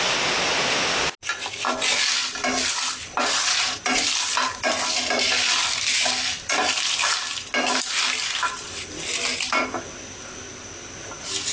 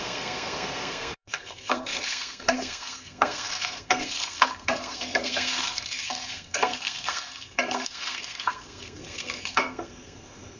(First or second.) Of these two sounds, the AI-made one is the second